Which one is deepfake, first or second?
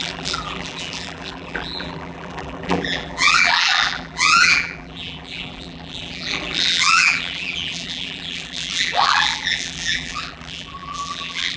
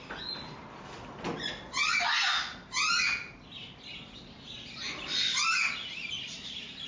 first